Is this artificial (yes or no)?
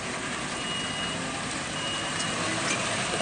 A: no